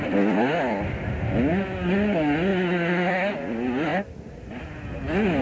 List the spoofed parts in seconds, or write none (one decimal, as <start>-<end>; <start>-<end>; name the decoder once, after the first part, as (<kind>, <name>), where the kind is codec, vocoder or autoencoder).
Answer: none